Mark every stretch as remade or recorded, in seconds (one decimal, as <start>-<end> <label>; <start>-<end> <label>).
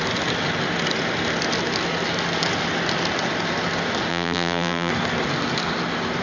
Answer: 0.0-4.1 recorded; 4.1-4.9 remade; 4.9-6.2 recorded